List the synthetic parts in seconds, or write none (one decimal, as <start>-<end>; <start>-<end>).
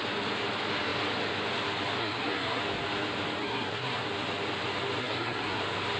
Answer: 2.0-2.6; 3.4-4.0; 5.0-5.6